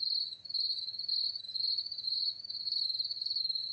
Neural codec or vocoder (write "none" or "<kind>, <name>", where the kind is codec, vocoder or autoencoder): none